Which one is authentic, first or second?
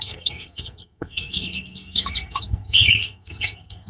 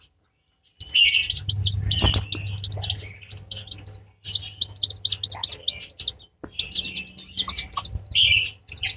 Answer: second